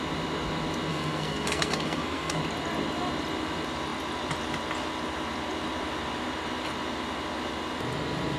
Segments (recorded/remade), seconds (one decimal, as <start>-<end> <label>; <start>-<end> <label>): 0.0-0.9 recorded; 0.9-2.4 remade; 2.4-8.4 recorded